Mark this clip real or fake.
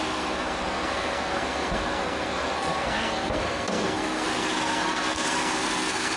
fake